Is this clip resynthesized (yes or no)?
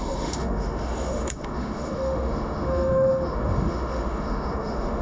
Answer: yes